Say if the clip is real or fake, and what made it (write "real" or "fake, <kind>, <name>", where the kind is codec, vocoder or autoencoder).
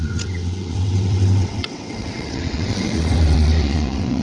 fake, vocoder, WaveNeXt